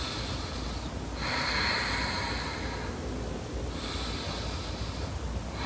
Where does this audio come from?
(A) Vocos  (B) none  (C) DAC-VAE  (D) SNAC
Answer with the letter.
B